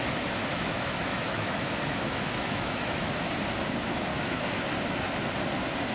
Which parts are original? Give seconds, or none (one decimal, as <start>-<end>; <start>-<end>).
0.0-0.5; 3.1-4.1; 4.6-5.9